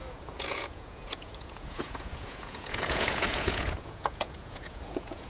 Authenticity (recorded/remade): remade